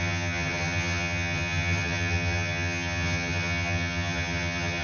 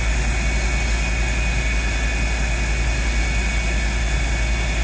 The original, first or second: second